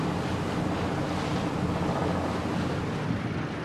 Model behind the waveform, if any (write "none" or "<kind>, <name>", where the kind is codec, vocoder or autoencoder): none